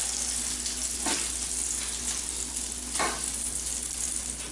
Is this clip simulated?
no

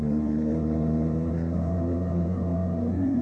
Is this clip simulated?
yes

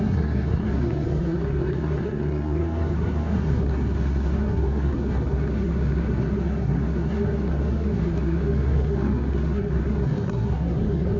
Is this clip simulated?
yes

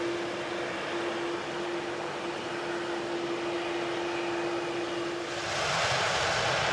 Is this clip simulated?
no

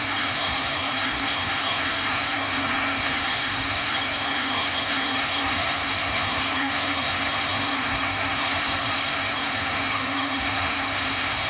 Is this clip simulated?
yes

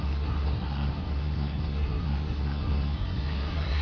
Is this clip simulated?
yes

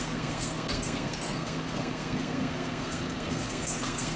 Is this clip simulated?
yes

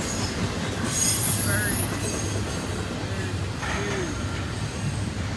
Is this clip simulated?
no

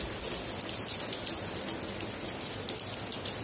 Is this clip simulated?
no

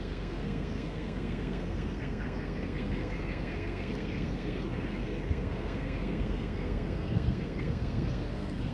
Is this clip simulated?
yes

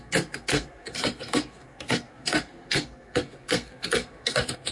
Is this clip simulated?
yes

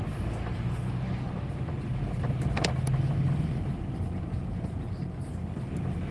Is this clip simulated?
no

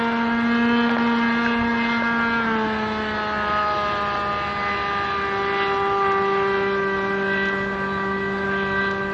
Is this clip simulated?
no